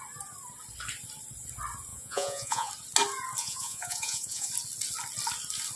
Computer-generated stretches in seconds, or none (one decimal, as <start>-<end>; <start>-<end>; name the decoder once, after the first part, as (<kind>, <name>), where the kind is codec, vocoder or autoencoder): 1.9-2.7 (vocoder, Vocos); 3.4-4.5